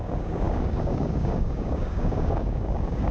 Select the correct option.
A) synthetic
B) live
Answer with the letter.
A